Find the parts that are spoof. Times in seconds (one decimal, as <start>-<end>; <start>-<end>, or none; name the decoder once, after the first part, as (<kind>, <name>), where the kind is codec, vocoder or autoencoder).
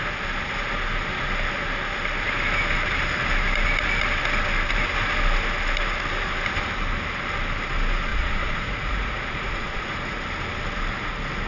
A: 8.1-10.2 (vocoder, Vocos)